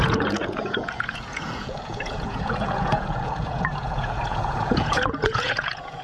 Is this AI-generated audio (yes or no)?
yes